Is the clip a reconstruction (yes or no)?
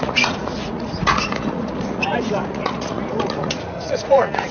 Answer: yes